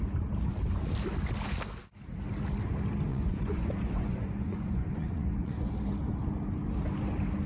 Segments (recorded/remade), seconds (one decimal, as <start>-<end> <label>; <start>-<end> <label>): 0.0-3.1 recorded; 3.1-5.7 remade; 5.7-7.5 recorded